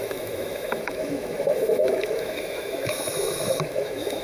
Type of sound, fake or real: fake